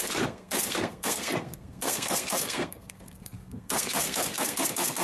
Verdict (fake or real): fake